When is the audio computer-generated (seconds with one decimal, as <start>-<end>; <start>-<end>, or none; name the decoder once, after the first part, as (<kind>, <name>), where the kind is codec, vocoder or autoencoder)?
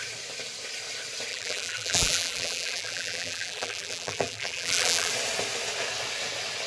1.3-5.1 (vocoder, BigVGAN v2)